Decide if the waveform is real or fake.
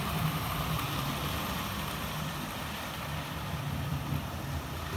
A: real